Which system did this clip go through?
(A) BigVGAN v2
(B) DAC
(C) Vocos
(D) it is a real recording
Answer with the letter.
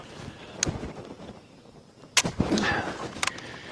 D